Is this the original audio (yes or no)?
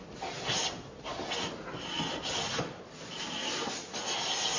yes